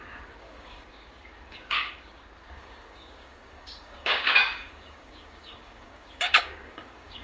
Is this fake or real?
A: fake